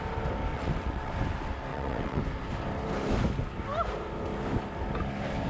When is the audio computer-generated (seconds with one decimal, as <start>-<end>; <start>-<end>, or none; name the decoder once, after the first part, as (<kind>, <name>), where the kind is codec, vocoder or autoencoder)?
0.5-1.1 (vocoder, WaveNeXt); 1.7-2.2